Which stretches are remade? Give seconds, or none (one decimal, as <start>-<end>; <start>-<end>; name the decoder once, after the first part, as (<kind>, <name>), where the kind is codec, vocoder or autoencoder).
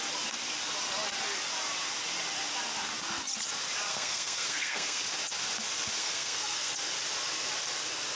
3.9-5.0 (codec, SNAC); 6.0-6.7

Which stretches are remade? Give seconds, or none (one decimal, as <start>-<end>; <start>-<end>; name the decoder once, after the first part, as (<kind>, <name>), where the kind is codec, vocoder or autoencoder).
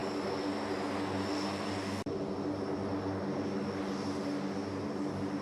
none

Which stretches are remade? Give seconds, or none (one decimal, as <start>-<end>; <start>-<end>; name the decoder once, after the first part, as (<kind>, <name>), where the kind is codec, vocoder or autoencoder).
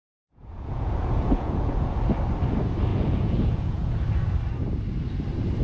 0.0-2.0 (vocoder, Vocos); 2.9-4.0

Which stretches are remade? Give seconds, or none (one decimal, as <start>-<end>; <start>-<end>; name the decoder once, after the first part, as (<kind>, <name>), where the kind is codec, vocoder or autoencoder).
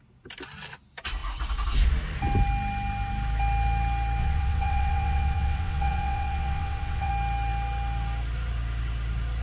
4.2-7.1 (vocoder, WaveNeXt)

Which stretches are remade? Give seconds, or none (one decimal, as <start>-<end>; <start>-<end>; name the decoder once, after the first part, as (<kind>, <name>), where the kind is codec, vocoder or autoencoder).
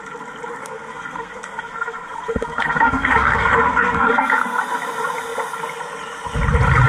0.6-4.6 (codec, SNAC)